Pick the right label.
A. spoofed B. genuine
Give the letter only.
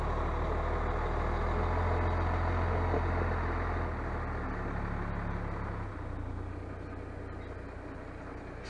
B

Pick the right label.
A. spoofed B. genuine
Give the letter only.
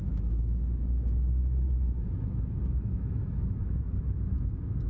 A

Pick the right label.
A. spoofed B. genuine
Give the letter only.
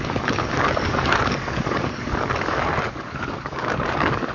A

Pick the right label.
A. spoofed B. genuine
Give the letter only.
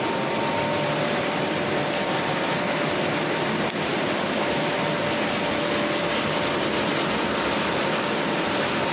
B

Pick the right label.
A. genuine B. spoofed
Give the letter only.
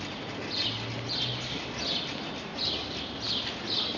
A